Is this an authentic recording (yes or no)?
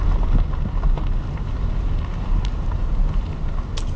yes